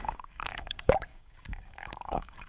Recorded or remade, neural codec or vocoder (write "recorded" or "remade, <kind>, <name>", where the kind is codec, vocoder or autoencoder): remade, codec, DAC